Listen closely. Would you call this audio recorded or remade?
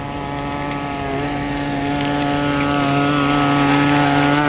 recorded